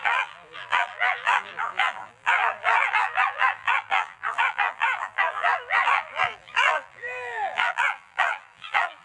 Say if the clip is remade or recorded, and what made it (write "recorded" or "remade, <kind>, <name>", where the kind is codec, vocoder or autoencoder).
remade, vocoder, BigVGAN v2